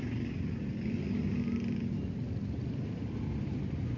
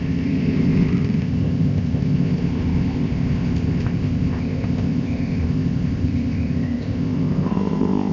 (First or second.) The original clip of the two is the first